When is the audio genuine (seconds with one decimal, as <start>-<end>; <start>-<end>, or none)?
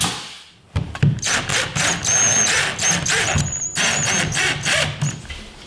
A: 0.0-5.7